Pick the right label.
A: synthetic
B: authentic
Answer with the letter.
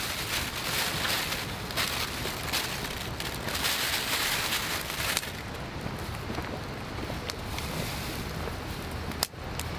B